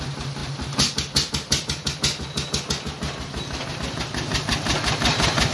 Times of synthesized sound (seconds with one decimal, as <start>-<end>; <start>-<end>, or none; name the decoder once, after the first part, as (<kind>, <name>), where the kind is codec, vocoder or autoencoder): none